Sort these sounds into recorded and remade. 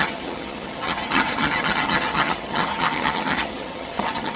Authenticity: remade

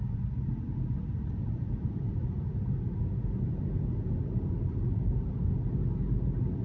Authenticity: recorded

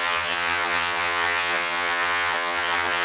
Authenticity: remade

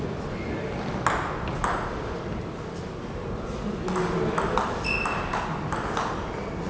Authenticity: recorded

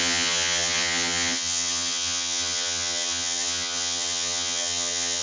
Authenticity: remade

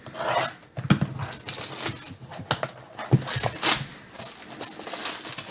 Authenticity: recorded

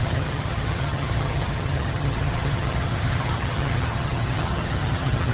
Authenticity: remade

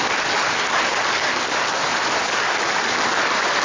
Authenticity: recorded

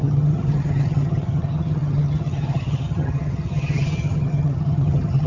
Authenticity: remade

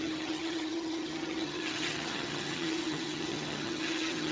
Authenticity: remade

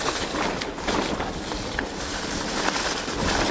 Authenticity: recorded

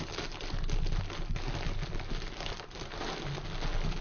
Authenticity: recorded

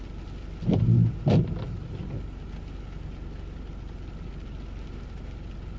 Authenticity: recorded